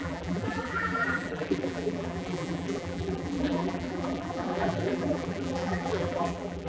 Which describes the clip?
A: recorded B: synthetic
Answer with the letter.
B